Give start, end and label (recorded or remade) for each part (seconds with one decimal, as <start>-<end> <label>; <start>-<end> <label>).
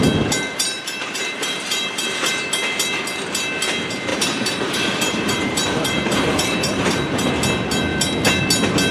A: 0.0-0.5 recorded; 0.5-2.3 remade; 2.3-4.1 recorded; 4.1-7.3 remade; 7.3-8.9 recorded